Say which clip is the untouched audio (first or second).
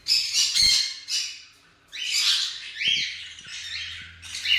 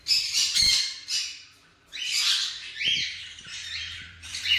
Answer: first